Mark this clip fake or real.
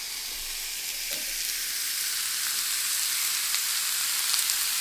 real